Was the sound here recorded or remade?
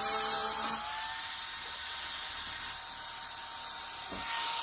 recorded